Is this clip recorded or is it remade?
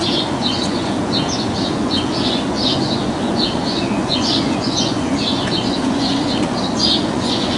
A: remade